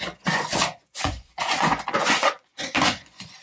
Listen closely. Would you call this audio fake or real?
fake